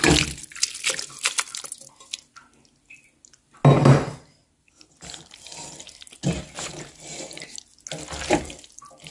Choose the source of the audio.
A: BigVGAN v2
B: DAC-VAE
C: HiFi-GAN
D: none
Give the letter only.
D